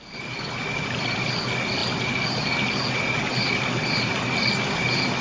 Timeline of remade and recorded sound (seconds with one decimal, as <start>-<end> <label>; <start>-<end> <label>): 0.0-5.2 recorded